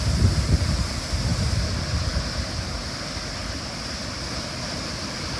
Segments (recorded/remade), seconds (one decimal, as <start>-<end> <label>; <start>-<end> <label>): 0.0-1.3 recorded; 1.3-2.1 remade; 2.1-5.4 recorded